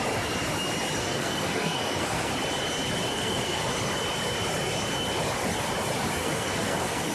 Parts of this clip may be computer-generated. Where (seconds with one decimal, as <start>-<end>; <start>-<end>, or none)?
1.0-2.3; 3.1-3.7; 6.2-7.1